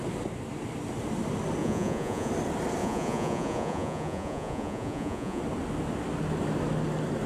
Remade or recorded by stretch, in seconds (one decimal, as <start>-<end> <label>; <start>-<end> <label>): 0.0-1.6 recorded; 1.6-2.3 remade; 2.3-2.8 recorded; 2.8-5.4 remade; 5.4-7.3 recorded